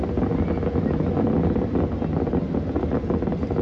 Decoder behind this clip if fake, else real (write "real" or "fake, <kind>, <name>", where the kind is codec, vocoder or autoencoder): real